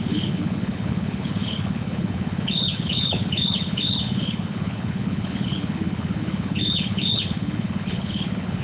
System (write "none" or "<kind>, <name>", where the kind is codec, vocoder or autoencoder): codec, HILCodec